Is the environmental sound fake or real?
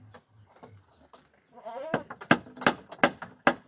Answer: real